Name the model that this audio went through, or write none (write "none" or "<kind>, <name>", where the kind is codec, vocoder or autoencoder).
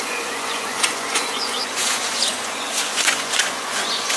vocoder, Vocos